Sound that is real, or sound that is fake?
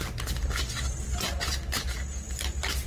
real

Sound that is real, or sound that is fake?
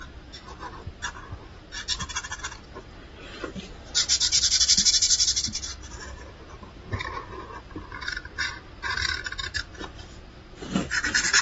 real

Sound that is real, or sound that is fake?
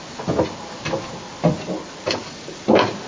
real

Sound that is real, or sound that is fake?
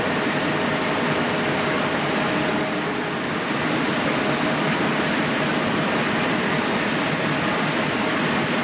real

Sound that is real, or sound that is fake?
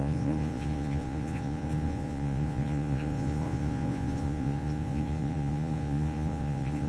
fake